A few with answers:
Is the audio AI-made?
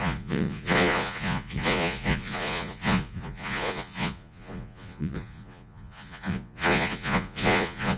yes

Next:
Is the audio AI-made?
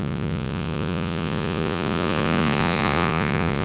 yes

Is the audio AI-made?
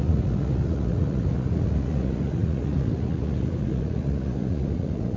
yes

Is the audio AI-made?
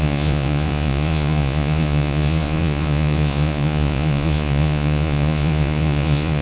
yes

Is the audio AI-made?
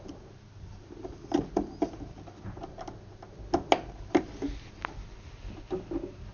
no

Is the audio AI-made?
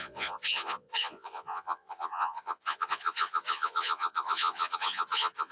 yes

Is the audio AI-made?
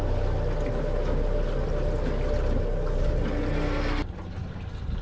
no